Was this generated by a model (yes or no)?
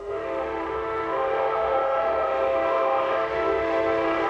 yes